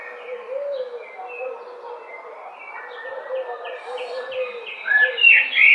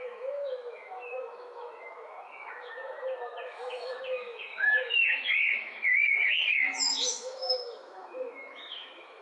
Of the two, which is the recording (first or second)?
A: first